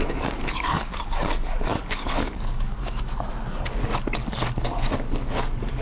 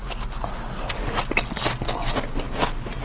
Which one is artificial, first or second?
first